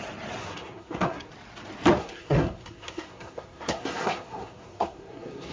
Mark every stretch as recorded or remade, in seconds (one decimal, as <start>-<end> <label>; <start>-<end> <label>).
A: 0.0-0.4 recorded; 0.4-1.3 remade; 1.3-2.0 recorded; 2.0-5.5 remade